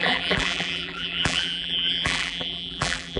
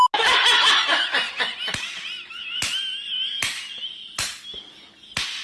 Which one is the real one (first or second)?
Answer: second